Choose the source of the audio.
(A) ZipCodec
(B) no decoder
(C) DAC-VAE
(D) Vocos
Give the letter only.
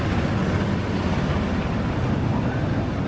B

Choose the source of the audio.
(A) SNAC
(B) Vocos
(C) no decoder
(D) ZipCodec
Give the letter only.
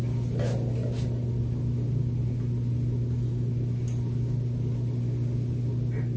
C